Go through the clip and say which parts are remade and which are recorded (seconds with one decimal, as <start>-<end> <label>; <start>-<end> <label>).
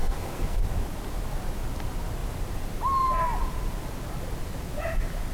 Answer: 0.0-0.6 remade; 0.6-5.3 recorded